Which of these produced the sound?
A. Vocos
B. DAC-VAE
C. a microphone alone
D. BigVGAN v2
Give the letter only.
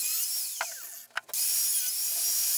C